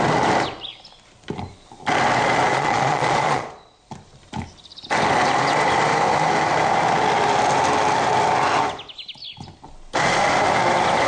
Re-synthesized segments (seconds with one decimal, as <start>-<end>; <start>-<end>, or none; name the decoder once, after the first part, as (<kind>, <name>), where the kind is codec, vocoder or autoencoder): 2.5-3.8 (vocoder, Vocos)